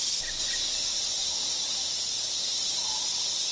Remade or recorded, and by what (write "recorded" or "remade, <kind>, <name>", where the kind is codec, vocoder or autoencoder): recorded